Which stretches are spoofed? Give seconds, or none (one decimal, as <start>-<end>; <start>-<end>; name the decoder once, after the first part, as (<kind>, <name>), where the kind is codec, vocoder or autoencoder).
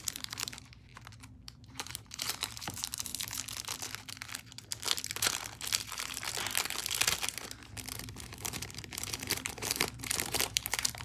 0.0-3.1 (vocoder, BigVGAN v2); 8.3-11.0